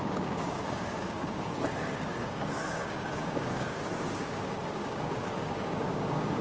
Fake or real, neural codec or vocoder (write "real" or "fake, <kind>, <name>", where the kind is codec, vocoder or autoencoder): fake, codec, DAC